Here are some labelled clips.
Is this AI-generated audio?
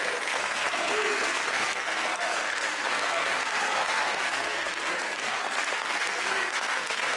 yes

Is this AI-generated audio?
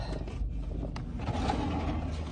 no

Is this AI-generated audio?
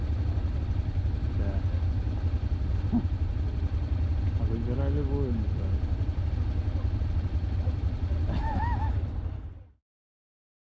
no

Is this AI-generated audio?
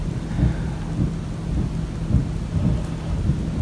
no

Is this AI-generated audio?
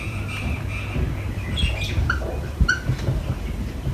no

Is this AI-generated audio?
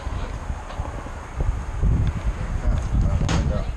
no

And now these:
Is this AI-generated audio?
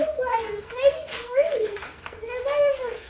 yes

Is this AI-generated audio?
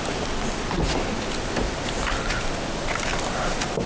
no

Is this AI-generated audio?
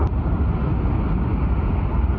no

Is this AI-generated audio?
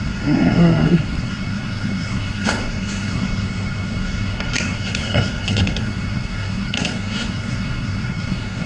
yes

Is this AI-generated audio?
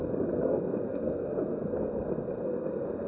yes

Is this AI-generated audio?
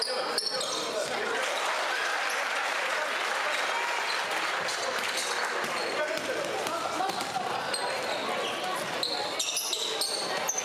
no